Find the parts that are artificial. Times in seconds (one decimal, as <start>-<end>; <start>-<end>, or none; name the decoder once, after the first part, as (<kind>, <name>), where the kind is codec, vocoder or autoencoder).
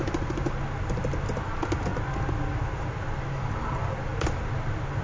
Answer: none